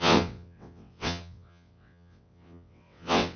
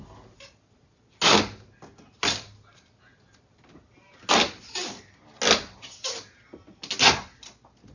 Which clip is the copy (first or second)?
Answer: first